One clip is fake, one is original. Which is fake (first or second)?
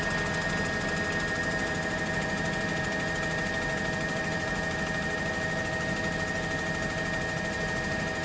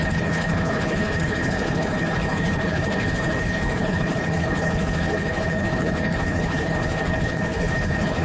second